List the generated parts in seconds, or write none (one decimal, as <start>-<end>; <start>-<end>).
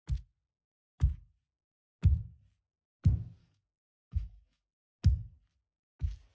3.4-4.9